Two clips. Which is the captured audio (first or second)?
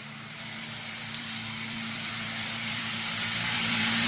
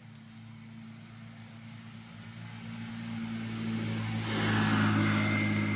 second